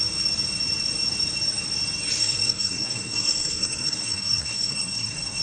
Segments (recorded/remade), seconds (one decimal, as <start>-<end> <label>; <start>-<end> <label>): 0.0-2.2 recorded; 2.2-5.4 remade